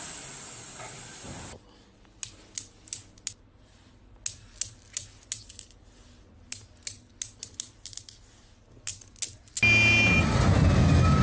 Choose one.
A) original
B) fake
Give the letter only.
A